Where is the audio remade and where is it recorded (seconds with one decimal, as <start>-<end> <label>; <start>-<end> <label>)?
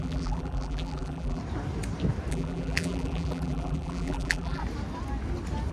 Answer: 0.0-1.4 remade; 1.4-2.3 recorded; 2.3-4.6 remade; 4.6-5.7 recorded